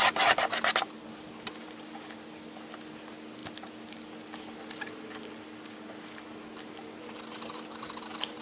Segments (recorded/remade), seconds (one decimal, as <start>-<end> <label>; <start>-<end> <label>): 0.0-8.4 recorded